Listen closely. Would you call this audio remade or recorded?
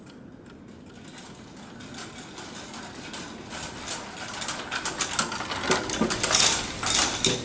recorded